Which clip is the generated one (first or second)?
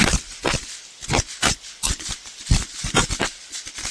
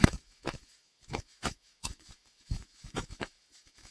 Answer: second